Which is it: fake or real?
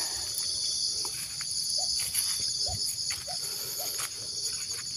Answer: real